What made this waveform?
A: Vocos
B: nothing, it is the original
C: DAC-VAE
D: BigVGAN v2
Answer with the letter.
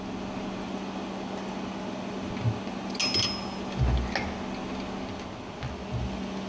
B